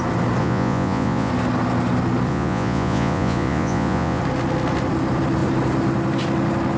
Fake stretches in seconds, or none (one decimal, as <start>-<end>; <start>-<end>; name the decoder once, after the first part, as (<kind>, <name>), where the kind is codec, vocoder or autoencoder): 0.4-1.3 (vocoder, Vocos); 2.3-4.2